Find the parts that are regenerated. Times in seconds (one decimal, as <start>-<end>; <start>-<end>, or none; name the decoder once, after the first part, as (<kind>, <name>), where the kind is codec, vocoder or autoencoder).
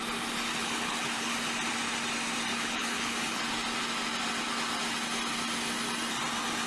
0.6-1.3 (codec, HILCodec); 2.5-3.4